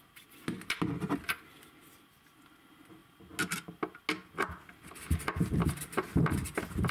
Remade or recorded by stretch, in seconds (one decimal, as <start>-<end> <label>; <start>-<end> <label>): 0.0-6.9 recorded